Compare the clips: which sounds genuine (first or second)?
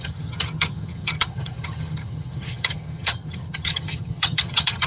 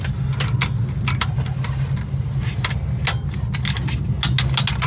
second